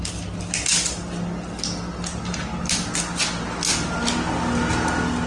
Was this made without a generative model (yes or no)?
yes